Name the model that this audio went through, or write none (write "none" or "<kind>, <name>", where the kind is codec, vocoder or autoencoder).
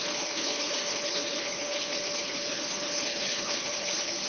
codec, HILCodec